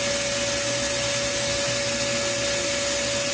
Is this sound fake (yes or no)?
no